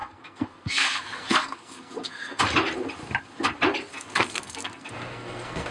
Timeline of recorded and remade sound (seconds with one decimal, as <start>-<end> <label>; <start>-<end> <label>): 0.0-2.4 remade; 2.4-3.9 recorded; 3.9-5.7 remade